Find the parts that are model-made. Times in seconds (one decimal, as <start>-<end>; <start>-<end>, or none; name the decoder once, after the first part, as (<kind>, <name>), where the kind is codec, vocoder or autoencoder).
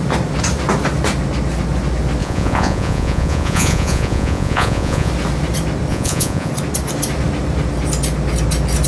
2.2-5.1 (vocoder, Vocos); 5.9-6.5